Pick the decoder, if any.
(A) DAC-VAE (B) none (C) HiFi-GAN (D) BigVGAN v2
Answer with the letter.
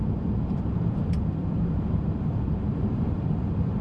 D